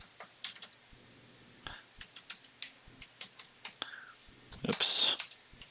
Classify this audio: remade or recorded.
recorded